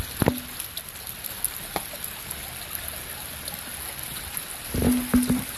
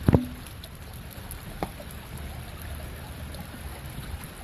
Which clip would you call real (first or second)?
first